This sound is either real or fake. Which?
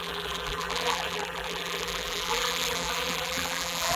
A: fake